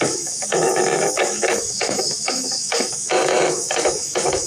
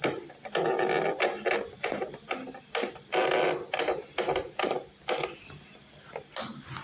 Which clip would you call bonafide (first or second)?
second